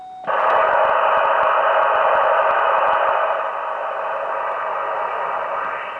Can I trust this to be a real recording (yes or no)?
yes